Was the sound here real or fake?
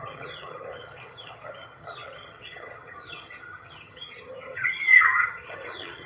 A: fake